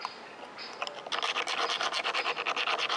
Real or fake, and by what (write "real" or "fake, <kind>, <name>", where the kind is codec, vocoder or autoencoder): real